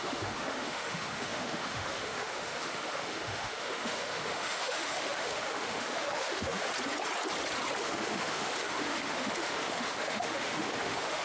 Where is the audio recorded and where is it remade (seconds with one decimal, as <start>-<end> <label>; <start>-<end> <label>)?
0.0-6.7 remade; 6.7-7.8 recorded; 7.8-11.2 remade